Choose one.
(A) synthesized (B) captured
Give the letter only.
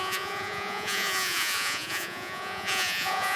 A